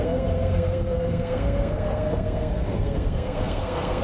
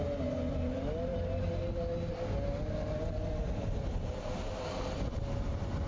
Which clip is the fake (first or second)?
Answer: first